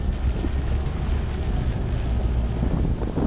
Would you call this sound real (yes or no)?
yes